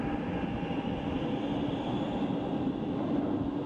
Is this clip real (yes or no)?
yes